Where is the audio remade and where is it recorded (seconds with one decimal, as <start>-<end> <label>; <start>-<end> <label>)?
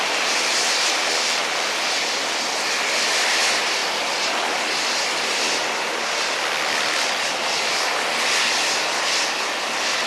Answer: 0.0-10.1 recorded